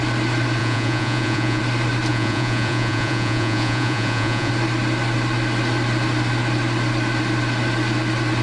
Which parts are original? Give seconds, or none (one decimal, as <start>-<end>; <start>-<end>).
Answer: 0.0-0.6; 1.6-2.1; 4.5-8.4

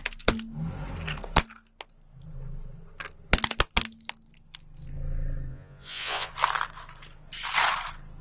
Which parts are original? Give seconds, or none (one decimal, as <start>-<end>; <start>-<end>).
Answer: 0.0-5.5; 6.3-8.2

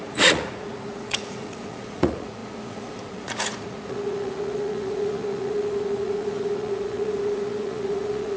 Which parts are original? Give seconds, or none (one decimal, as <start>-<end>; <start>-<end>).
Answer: none

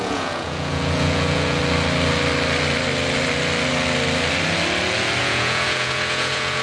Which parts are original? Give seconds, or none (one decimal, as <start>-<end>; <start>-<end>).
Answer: 1.6-5.2